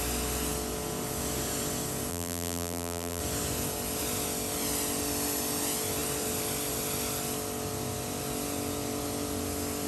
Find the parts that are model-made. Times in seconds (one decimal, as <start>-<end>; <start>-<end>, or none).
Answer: 2.1-3.2